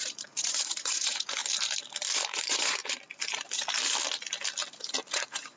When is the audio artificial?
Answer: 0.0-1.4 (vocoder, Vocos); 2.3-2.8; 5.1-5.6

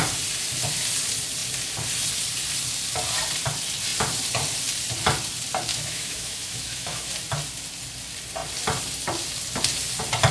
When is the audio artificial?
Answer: 5.7-7.1 (autoencoder, DAC-VAE)

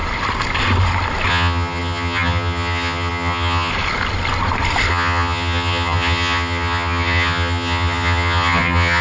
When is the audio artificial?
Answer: 1.3-3.7 (vocoder, HiFi-GAN); 4.9-9.0

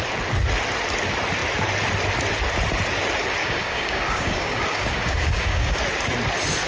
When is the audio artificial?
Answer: 3.4-5.8 (codec, DAC)